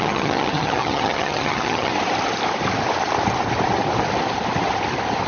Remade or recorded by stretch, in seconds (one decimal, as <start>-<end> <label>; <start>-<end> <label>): 0.0-1.9 remade; 1.9-5.3 recorded